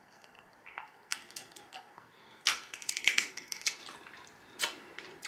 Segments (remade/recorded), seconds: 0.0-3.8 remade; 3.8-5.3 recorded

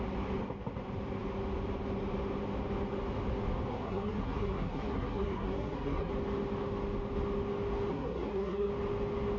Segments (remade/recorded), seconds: 0.0-3.7 recorded; 3.7-6.1 remade; 6.1-7.9 recorded; 7.9-8.7 remade; 8.7-9.4 recorded

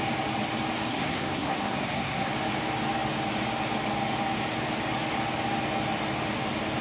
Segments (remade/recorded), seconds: 0.0-0.9 recorded; 0.9-2.3 remade; 2.3-6.8 recorded

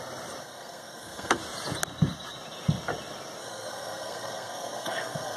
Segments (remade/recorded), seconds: 0.0-0.4 recorded; 0.4-1.4 remade; 1.4-3.4 recorded; 3.4-5.4 remade

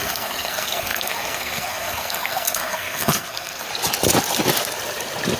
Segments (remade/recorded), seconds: 0.0-3.7 remade; 3.7-5.4 recorded

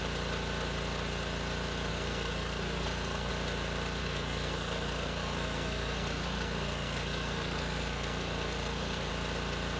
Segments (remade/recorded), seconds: 0.0-1.9 recorded; 1.9-3.3 remade; 3.3-4.0 recorded; 4.0-9.1 remade; 9.1-9.8 recorded

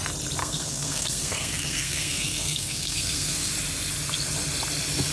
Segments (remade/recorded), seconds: 0.0-0.4 recorded; 0.4-3.5 remade; 3.5-5.1 recorded